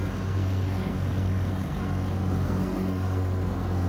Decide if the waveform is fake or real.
fake